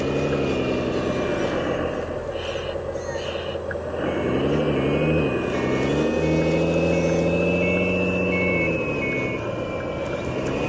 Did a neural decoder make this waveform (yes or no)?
no